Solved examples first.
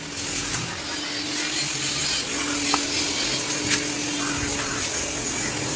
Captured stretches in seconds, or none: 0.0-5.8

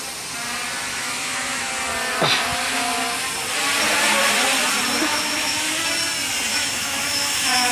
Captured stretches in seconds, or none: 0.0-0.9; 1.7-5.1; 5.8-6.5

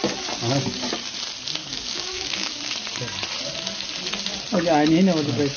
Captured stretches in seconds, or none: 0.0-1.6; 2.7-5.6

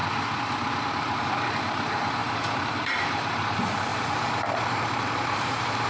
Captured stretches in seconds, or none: 0.0-0.9

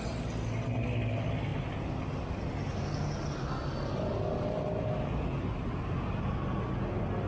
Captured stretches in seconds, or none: 0.0-7.3